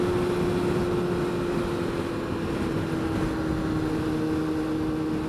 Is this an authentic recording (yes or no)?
yes